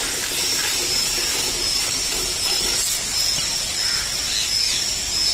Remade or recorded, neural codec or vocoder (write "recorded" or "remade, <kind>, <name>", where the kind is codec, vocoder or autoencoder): recorded